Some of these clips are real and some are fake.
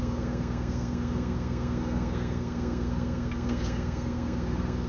fake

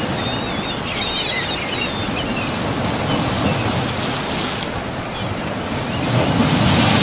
real